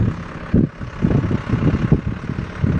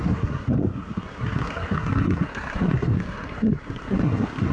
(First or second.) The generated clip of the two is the second